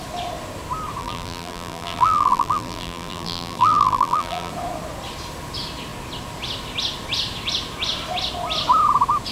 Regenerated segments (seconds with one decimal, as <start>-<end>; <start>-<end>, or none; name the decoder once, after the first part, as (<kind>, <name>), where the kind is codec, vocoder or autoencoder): 1.0-4.5 (vocoder, BigVGAN v2)